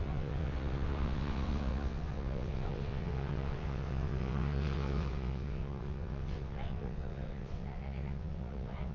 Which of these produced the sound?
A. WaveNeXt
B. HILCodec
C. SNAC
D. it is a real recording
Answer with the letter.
A